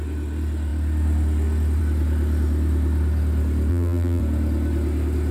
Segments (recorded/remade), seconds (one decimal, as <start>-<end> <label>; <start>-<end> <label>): 0.0-3.7 recorded; 3.7-4.2 remade; 4.2-5.3 recorded